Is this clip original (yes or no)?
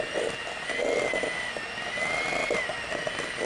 yes